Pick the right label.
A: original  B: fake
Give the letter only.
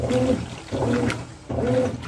A